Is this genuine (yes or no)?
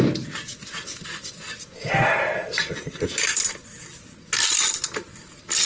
yes